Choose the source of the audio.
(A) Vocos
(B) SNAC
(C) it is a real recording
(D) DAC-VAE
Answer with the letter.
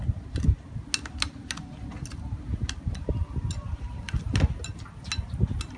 C